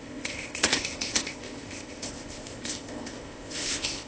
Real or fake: fake